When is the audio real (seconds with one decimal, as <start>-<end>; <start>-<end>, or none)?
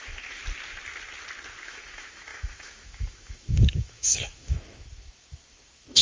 0.4-1.6